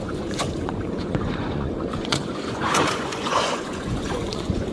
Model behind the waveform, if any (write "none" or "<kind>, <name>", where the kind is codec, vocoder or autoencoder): vocoder, Vocos